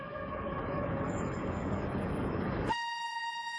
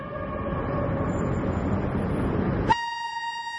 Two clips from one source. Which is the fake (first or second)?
first